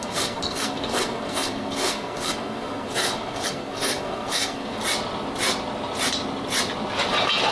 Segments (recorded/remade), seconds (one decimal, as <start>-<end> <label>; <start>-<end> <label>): 0.0-4.8 remade; 4.8-7.5 recorded